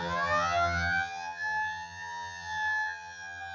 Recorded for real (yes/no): no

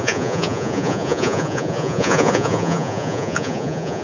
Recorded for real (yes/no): no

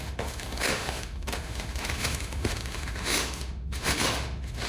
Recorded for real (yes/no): no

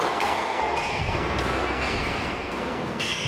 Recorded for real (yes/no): no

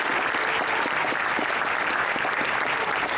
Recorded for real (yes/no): yes